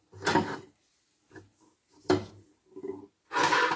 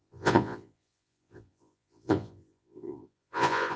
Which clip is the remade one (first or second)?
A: second